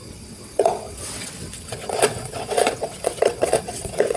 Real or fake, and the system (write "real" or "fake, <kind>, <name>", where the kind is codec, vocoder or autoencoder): fake, vocoder, WaveNeXt